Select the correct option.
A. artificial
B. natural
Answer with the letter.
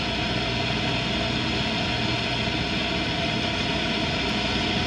B